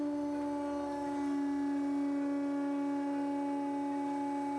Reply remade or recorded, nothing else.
recorded